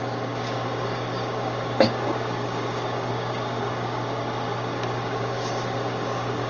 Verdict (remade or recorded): remade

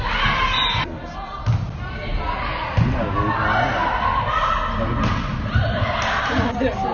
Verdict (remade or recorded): recorded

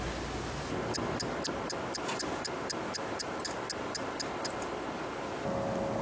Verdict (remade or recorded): recorded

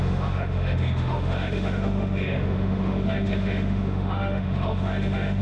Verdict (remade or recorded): remade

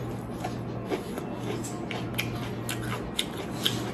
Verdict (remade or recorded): recorded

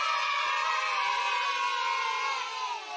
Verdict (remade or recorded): recorded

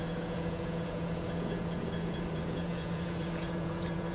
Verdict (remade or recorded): remade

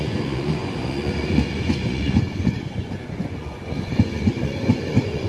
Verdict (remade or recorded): remade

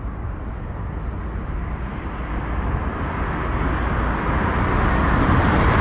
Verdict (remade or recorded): recorded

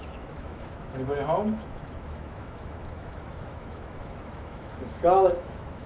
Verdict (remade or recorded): remade